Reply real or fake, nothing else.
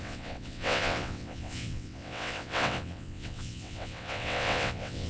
fake